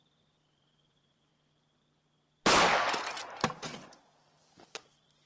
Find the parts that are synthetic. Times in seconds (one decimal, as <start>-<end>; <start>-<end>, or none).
0.0-1.3; 2.9-5.3